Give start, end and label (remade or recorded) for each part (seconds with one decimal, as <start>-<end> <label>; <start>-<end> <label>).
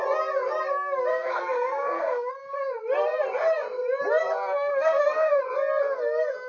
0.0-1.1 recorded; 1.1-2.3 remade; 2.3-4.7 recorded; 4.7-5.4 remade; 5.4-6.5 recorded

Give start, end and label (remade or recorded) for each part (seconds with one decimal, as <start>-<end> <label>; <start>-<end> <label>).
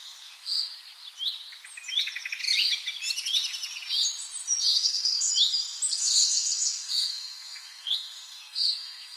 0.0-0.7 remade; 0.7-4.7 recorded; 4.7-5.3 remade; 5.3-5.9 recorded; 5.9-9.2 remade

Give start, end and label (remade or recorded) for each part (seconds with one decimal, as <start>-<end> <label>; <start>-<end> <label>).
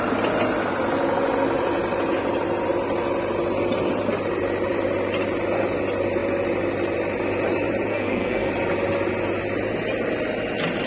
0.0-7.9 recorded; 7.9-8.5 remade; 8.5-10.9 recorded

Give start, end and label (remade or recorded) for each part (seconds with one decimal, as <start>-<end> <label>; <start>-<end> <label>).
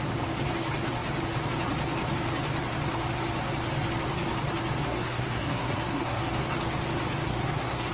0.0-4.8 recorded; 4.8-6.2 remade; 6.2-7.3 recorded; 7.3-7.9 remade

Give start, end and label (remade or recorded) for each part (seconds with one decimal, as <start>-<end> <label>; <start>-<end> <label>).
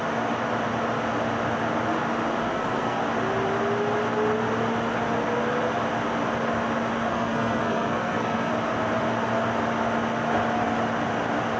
0.0-2.4 recorded; 2.4-3.0 remade; 3.0-7.1 recorded; 7.1-8.5 remade; 8.5-11.6 recorded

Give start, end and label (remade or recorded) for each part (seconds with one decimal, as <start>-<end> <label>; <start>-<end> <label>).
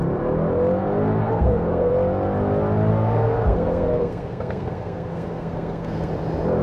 0.0-1.2 recorded; 1.2-1.9 remade; 1.9-2.9 recorded; 2.9-6.1 remade; 6.1-6.6 recorded